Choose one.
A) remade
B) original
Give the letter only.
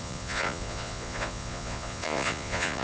A